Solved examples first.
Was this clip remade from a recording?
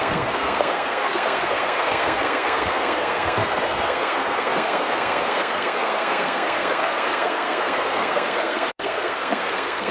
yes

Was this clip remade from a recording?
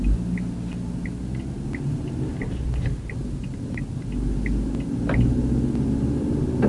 no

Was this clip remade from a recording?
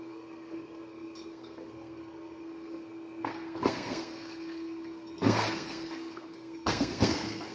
yes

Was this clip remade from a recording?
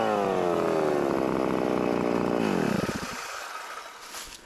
no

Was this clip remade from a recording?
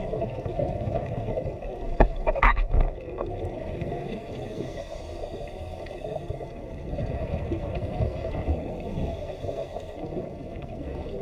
yes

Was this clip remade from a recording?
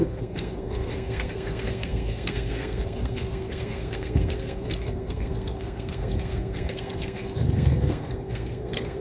yes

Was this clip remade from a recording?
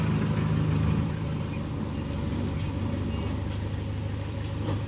no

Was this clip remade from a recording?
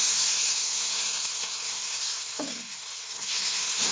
yes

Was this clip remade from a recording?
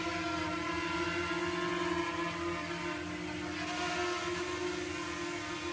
no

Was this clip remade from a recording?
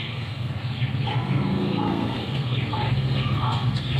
yes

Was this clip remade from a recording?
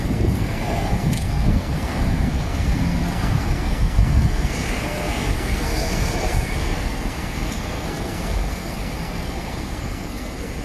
yes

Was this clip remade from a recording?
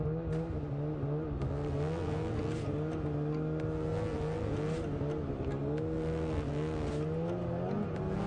no